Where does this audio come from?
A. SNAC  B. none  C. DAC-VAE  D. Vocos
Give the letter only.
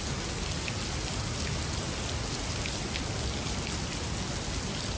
B